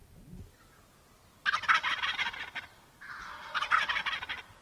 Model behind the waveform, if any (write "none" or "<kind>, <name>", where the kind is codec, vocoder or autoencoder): none